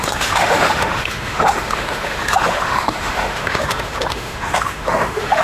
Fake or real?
fake